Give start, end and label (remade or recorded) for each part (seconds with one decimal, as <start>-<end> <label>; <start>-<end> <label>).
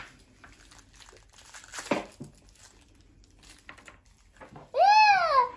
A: 0.0-5.6 recorded